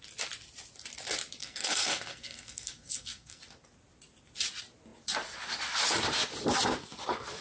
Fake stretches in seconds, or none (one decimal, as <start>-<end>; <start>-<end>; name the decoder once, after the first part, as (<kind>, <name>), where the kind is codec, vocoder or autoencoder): 1.4-3.4 (codec, SNAC)